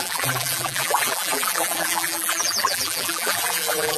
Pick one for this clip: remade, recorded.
remade